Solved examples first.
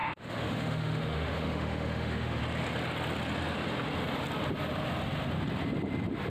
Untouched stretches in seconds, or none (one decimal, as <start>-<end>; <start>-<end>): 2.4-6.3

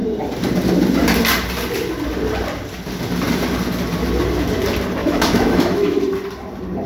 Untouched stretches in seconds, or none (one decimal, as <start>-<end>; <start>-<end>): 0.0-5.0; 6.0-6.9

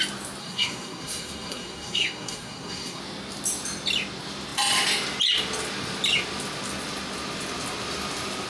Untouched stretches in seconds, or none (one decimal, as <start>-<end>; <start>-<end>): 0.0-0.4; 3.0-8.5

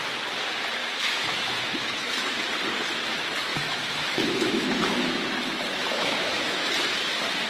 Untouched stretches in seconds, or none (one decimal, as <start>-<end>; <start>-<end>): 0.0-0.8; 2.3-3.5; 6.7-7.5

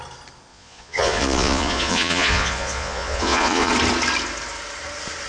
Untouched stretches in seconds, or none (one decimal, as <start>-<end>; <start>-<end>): 0.0-0.5; 3.7-5.3